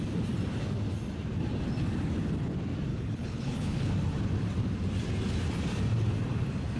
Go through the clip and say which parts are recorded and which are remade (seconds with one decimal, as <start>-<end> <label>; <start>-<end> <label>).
0.0-2.9 recorded; 2.9-3.9 remade; 3.9-6.8 recorded